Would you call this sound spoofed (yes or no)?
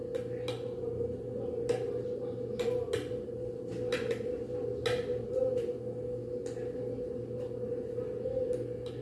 no